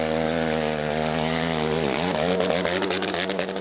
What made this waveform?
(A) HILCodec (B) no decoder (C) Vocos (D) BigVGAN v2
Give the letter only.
B